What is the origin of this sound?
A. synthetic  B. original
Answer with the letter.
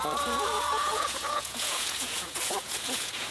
A